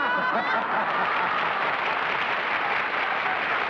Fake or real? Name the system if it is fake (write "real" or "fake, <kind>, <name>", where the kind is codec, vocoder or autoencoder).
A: real